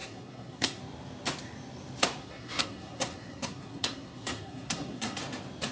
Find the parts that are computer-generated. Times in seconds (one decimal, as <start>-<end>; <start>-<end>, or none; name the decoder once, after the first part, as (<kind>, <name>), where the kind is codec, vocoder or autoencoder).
0.0-0.8 (codec, SNAC); 2.2-5.2